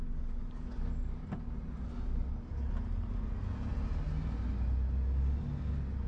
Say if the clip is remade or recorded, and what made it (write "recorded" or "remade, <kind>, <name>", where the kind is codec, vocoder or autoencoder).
recorded